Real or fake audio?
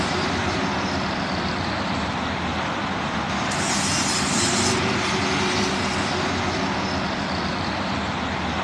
real